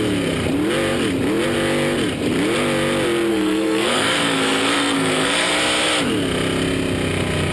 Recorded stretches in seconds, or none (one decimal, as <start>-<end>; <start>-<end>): 0.0-3.3; 5.5-7.5